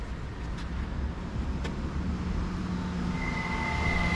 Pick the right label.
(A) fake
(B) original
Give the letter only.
B